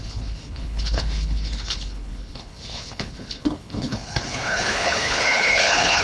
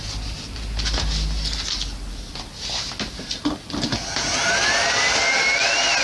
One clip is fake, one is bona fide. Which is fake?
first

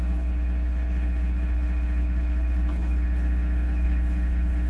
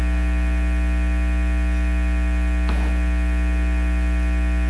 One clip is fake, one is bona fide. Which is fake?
first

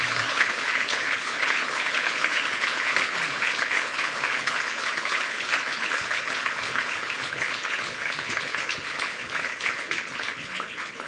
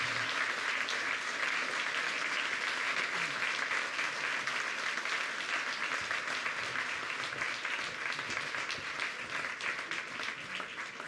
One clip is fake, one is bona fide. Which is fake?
first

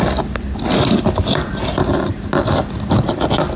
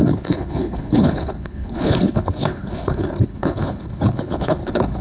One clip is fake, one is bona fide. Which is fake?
second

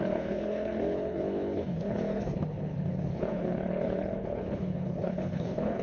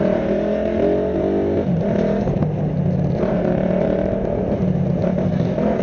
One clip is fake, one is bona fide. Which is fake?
first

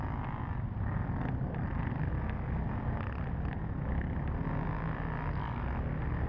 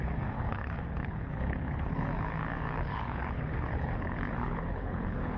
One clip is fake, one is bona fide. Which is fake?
second